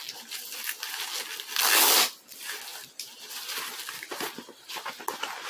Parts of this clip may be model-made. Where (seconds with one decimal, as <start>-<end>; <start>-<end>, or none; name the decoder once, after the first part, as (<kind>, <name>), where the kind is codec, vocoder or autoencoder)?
none